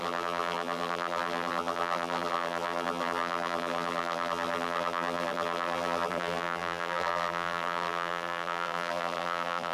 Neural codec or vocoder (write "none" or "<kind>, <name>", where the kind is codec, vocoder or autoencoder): vocoder, BigVGAN v2